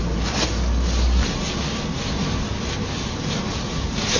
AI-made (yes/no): no